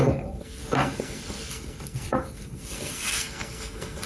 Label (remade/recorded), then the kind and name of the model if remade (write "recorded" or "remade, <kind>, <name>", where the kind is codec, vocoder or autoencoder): remade, codec, SNAC